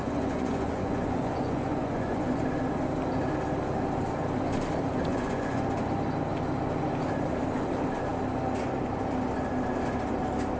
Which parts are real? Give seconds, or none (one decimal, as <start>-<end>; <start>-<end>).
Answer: 2.4-5.1; 5.6-10.6